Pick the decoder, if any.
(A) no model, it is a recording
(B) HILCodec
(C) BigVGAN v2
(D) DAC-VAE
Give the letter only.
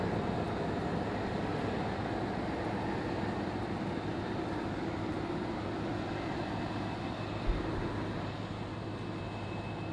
A